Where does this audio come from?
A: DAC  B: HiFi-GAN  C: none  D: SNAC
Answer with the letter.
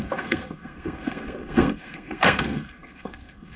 D